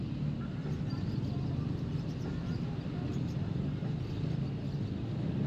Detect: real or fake real